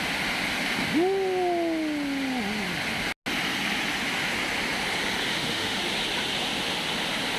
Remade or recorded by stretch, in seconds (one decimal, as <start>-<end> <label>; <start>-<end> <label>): 0.0-5.3 recorded; 5.3-5.8 remade; 5.8-7.4 recorded